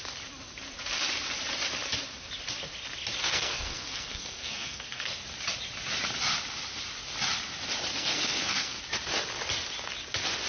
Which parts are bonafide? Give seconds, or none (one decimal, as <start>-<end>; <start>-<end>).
0.0-3.2; 5.2-7.9; 8.8-10.5